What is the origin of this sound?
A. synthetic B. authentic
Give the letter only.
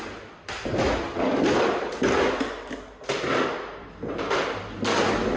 B